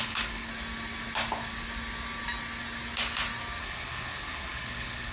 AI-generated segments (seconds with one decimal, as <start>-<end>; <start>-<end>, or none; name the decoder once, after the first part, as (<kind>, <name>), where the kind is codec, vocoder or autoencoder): 0.0-0.5 (codec, HILCodec); 3.6-5.1